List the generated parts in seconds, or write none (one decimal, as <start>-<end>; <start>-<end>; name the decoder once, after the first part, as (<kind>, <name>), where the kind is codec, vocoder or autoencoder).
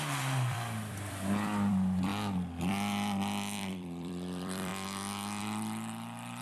0.0-2.1 (vocoder, BigVGAN v2); 2.6-4.7; 5.4-6.4